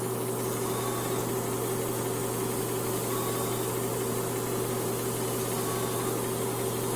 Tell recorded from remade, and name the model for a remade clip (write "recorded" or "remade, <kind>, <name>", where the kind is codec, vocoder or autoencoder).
recorded